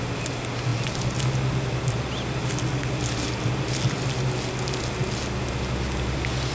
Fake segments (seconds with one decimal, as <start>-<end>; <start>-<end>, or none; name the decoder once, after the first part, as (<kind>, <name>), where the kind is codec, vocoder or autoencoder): none